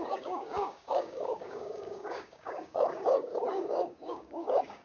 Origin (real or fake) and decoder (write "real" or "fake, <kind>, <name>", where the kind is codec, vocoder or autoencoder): fake, codec, DAC